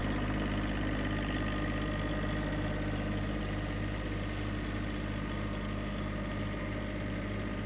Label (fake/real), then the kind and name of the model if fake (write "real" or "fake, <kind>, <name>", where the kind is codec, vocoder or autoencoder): real